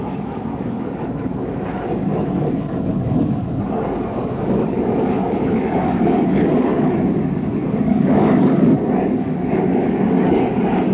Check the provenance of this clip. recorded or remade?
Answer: remade